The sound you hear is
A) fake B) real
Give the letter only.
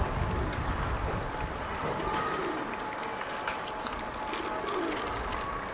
B